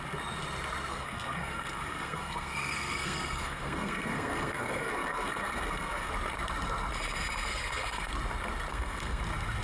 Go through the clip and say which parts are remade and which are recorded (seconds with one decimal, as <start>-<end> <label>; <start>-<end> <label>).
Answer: 0.0-0.9 recorded; 0.9-6.1 remade; 6.1-7.5 recorded; 7.5-8.1 remade; 8.1-8.7 recorded; 8.7-9.2 remade; 9.2-9.6 recorded